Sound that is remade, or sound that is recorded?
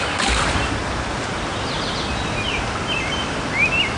recorded